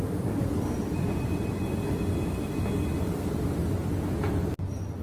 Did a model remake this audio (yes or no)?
no